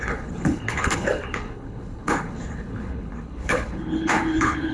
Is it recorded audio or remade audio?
remade